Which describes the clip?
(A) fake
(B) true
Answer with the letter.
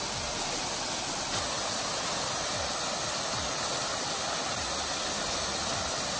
B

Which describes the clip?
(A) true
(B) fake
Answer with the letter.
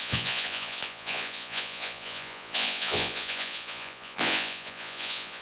B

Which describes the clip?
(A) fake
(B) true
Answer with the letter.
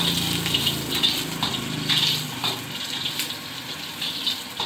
B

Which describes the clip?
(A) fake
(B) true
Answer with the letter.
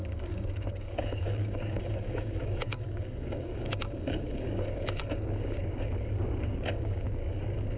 A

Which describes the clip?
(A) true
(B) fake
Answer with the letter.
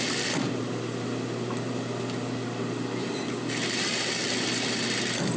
A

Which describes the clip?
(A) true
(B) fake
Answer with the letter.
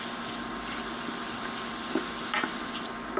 A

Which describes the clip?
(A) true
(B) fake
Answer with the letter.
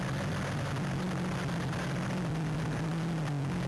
A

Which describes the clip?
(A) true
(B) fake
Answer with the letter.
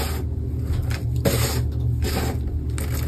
A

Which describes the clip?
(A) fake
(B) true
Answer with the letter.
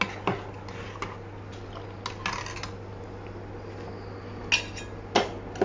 B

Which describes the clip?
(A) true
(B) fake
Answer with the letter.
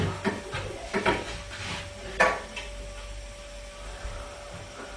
A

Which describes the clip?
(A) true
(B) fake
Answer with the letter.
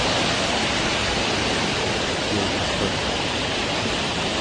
A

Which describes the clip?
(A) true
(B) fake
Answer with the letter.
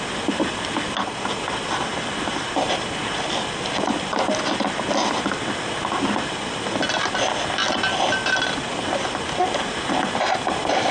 A